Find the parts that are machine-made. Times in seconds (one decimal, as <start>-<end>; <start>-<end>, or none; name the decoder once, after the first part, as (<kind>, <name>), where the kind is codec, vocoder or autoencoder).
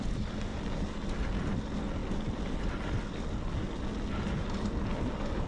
none